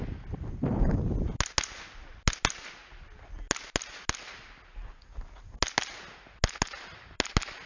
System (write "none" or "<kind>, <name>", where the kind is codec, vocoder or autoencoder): none